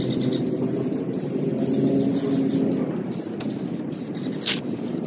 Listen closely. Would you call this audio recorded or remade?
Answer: recorded